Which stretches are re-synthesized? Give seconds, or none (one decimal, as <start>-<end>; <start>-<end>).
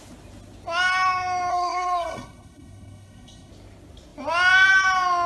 1.5-3.5